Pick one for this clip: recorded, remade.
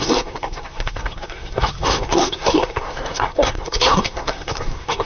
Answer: remade